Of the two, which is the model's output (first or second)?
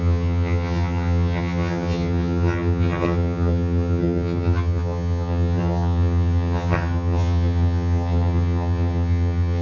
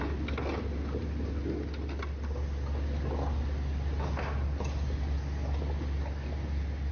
first